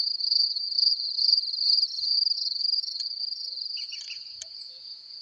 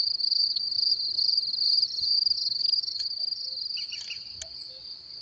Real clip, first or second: second